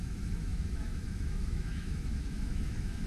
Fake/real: fake